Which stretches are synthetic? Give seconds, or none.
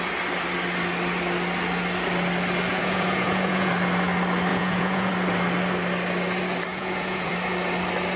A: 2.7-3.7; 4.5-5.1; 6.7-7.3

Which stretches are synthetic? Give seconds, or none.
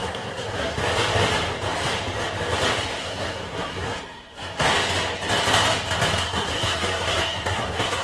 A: 0.0-0.8; 3.0-4.7; 6.2-8.0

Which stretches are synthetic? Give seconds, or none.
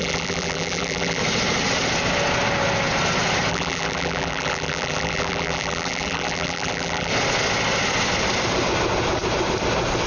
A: 0.0-1.2; 3.5-7.1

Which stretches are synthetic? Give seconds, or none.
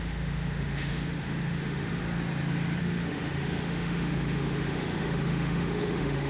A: 0.0-2.0; 2.8-6.3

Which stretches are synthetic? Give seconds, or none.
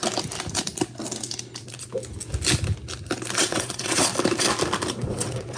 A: 3.4-4.1; 4.9-5.6